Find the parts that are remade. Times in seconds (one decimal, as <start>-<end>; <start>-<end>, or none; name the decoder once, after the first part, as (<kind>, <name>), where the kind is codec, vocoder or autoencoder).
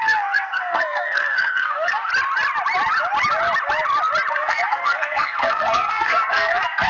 0.0-2.1 (codec, SNAC); 4.3-6.9